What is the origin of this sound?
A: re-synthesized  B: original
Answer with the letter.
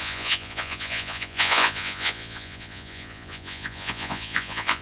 A